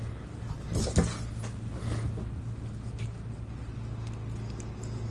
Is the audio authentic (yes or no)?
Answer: yes